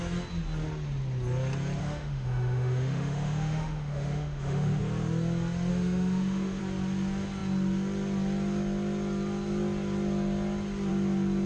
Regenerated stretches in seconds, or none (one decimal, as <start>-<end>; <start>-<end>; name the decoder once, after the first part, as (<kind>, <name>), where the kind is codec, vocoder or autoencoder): 1.8-4.8 (autoencoder, DAC-VAE); 5.7-6.6